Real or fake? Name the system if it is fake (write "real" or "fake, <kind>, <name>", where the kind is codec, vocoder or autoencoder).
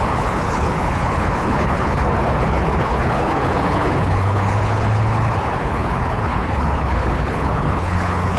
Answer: fake, codec, HILCodec